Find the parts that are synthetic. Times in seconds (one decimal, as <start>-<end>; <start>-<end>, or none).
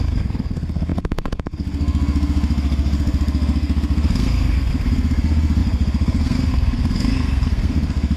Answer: 0.0-8.2